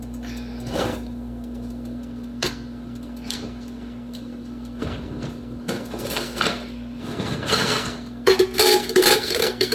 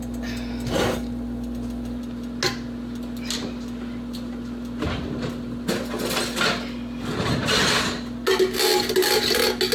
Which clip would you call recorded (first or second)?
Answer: second